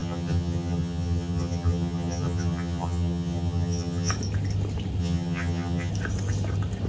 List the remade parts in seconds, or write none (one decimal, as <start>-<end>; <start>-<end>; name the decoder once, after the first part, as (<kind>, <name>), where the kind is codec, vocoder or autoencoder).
0.0-4.1 (vocoder, HiFi-GAN); 5.0-5.9